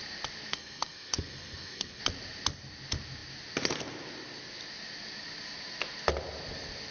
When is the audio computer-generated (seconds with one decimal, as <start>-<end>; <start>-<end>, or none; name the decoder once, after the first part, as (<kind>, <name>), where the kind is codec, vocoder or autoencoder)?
0.5-2.0 (codec, SNAC)